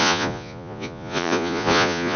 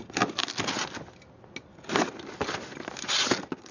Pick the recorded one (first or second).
second